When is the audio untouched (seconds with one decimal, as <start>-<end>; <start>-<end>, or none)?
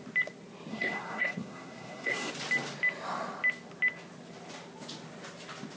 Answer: 0.0-0.7; 2.3-5.8